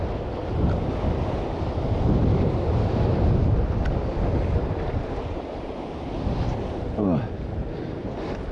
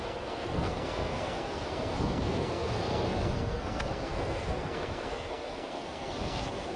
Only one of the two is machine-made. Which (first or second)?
second